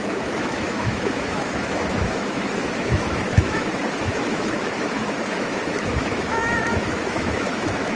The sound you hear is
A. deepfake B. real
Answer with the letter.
A